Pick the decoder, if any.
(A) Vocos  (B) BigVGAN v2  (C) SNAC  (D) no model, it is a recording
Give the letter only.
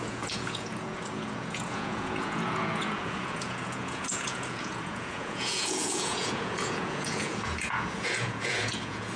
A